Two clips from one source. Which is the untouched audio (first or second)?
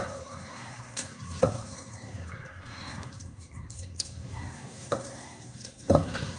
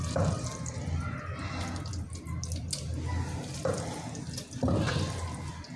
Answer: second